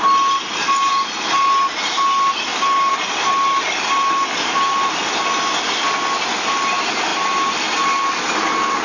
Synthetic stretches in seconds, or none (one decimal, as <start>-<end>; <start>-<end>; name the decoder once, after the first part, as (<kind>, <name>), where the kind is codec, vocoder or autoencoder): none